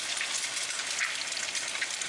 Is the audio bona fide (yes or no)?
yes